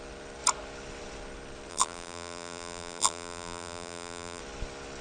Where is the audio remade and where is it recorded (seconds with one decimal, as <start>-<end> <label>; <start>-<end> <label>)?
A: 0.0-1.7 recorded; 1.7-4.4 remade; 4.4-5.0 recorded